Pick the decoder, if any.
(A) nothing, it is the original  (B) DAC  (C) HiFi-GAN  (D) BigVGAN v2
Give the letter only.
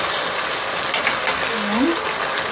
A